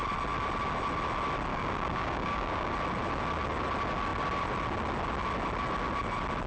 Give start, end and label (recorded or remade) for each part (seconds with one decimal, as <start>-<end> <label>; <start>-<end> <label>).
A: 0.0-1.5 recorded; 1.5-2.7 remade; 2.7-6.5 recorded